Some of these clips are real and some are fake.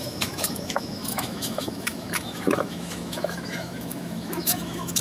fake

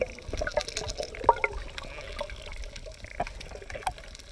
real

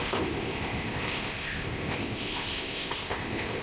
fake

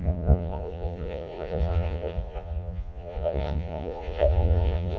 fake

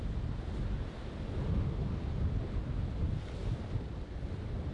real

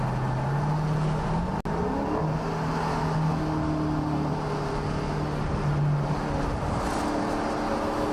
real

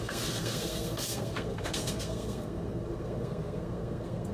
fake